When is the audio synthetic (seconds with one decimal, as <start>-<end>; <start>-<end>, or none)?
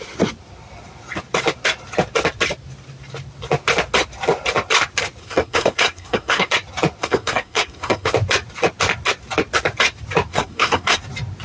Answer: 5.2-6.5; 7.0-8.1; 10.3-11.0